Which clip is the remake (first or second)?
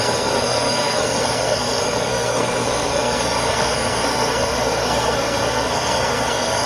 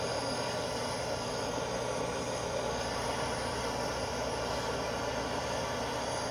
first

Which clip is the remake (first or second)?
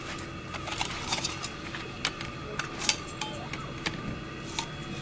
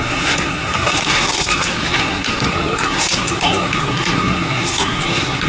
second